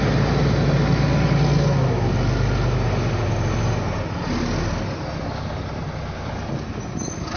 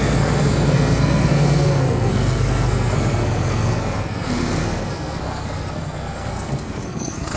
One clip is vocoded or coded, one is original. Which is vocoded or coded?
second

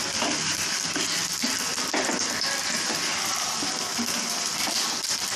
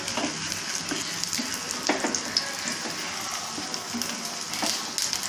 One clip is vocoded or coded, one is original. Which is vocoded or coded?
first